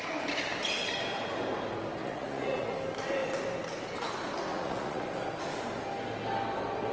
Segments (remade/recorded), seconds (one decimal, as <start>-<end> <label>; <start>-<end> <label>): 0.0-2.0 recorded; 2.0-2.7 remade; 2.7-4.5 recorded; 4.5-5.1 remade; 5.1-6.9 recorded